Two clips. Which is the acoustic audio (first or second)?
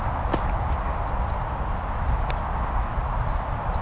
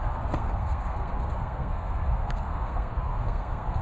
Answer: first